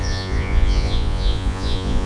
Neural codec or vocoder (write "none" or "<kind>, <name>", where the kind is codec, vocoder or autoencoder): vocoder, Vocos